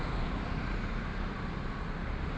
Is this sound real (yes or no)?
yes